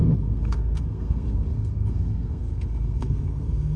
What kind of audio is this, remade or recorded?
remade